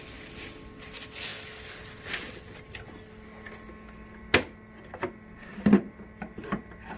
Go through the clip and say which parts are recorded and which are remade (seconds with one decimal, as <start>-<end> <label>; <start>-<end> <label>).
0.0-7.0 recorded